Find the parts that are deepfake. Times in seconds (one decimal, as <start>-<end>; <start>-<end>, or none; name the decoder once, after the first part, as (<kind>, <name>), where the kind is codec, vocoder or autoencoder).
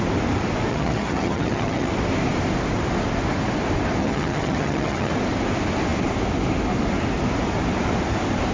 0.7-1.9 (vocoder, HiFi-GAN); 4.0-5.1